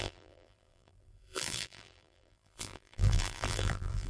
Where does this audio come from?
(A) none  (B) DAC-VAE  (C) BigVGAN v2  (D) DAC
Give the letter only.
C